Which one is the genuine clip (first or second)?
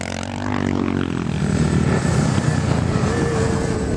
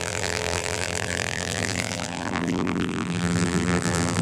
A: first